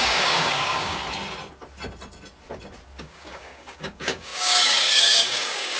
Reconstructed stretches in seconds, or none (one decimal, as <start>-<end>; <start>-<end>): 0.0-1.0; 3.0-5.8